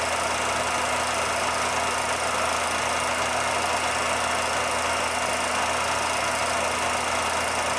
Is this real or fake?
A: real